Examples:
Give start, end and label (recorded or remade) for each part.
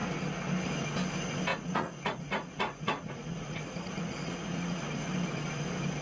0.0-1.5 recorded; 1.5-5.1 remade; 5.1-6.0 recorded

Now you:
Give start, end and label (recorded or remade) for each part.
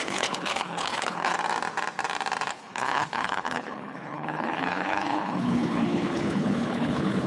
0.0-1.3 remade; 1.3-2.5 recorded; 2.5-7.3 remade